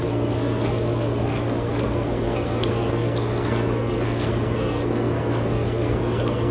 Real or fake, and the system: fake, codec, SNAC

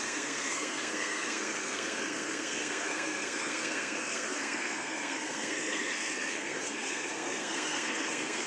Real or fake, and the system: fake, codec, SNAC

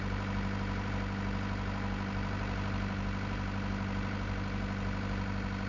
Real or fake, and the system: real